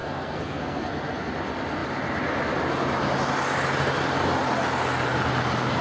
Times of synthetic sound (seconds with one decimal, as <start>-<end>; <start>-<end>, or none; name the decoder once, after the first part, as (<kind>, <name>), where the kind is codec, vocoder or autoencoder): 0.0-1.3 (codec, SNAC)